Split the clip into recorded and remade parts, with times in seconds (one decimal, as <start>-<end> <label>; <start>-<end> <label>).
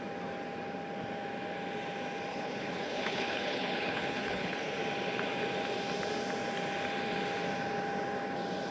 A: 0.0-2.3 recorded; 2.3-4.8 remade; 4.8-8.7 recorded